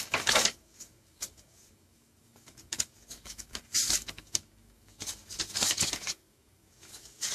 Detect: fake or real fake